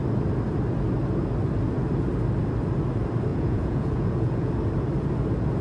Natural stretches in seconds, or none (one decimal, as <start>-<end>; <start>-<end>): 0.0-3.3; 4.5-5.6